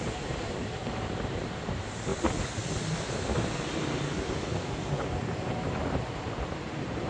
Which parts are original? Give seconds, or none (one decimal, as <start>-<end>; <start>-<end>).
2.1-4.9